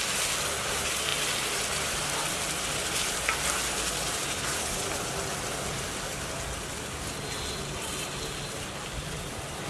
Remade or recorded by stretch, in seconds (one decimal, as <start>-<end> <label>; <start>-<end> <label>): 0.0-9.7 recorded